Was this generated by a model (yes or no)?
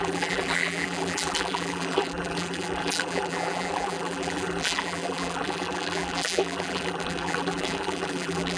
yes